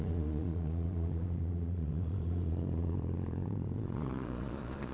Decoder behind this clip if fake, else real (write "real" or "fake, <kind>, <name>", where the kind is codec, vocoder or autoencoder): fake, vocoder, Vocos